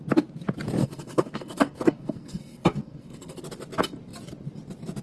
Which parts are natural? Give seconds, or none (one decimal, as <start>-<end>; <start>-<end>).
0.0-0.8; 3.4-5.0